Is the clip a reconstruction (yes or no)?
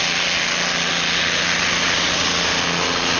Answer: no